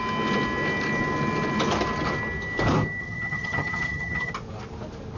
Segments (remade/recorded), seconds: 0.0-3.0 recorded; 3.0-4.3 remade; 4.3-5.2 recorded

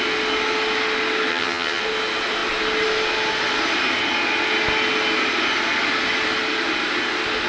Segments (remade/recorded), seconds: 0.0-1.3 recorded; 1.3-1.8 remade; 1.8-7.5 recorded

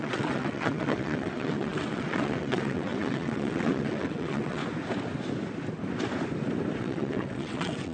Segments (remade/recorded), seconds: 0.0-4.6 remade; 4.6-6.8 recorded; 6.8-7.9 remade

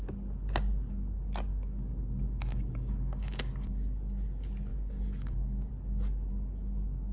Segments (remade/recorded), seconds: 0.0-1.5 recorded; 1.5-3.5 remade; 3.5-4.7 recorded; 4.7-5.7 remade; 5.7-7.1 recorded

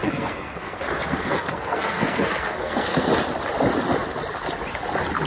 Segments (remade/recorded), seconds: 0.0-3.1 remade; 3.1-5.3 recorded